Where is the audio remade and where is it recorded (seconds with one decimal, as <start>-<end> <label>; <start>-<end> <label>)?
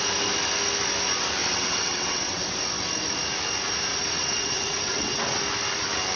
0.0-1.4 recorded; 1.4-2.4 remade; 2.4-3.9 recorded; 3.9-5.4 remade; 5.4-6.2 recorded